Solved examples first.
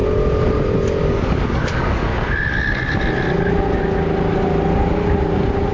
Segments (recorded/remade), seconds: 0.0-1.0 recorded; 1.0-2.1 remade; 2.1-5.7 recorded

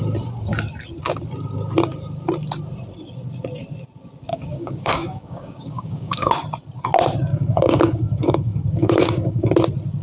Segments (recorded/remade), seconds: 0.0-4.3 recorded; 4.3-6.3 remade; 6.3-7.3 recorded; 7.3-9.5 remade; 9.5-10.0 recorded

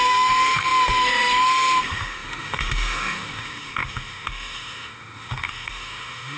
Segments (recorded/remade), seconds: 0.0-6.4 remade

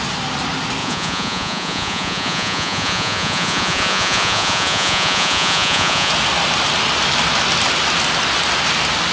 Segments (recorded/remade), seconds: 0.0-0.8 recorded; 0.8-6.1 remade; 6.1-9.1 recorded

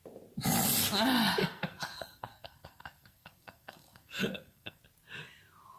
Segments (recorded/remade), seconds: 0.0-1.4 recorded; 1.4-4.8 remade; 4.8-5.8 recorded